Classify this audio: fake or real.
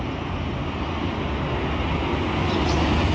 real